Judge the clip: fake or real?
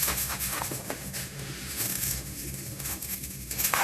fake